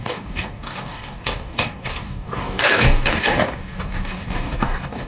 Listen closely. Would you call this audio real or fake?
fake